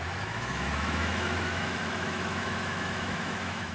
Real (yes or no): no